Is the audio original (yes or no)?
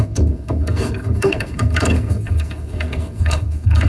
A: no